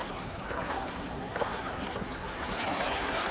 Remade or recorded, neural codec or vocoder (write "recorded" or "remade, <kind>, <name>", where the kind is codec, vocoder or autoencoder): remade, codec, SNAC